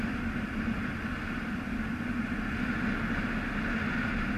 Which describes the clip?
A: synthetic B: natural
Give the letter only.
B